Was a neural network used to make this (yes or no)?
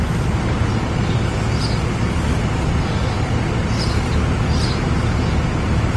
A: no